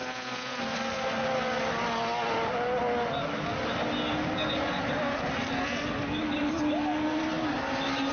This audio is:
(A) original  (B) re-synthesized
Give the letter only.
A